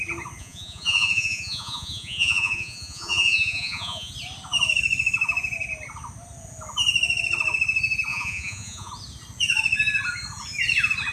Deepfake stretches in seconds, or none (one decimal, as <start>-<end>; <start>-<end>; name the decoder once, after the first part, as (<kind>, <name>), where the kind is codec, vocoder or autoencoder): 0.4-4.1 (vocoder, Vocos); 8.1-8.9